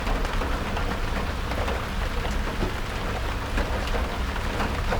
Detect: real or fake real